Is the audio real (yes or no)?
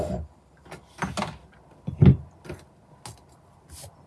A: yes